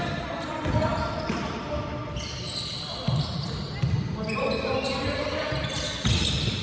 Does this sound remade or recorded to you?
recorded